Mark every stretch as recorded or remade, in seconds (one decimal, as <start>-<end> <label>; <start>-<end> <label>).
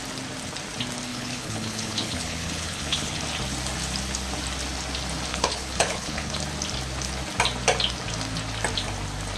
0.0-1.1 recorded; 1.1-3.2 remade; 3.2-5.3 recorded; 5.3-6.3 remade; 6.3-9.4 recorded